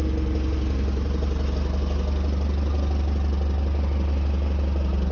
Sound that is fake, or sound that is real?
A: real